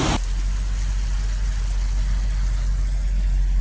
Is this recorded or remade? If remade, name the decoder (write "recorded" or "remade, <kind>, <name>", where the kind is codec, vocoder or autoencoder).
recorded